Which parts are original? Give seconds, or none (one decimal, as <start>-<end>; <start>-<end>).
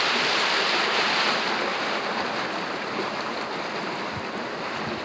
0.0-5.0